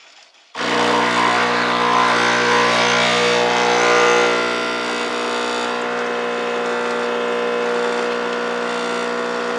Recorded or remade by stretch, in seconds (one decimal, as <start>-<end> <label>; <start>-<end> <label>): 0.0-9.6 recorded